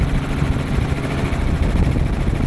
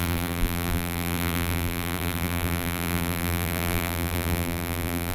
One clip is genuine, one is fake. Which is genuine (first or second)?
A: first